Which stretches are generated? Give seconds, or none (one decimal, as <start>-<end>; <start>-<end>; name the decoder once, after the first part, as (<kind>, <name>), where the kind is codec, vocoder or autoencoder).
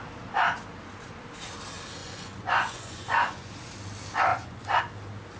2.0-3.5 (vocoder, Vocos); 4.3-4.8